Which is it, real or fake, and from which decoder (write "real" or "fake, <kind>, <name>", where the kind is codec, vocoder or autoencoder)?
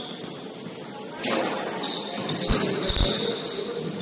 real